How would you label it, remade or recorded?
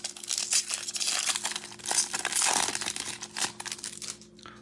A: recorded